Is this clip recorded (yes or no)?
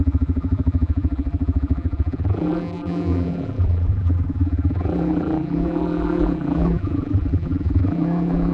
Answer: no